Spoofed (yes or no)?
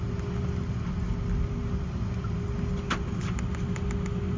no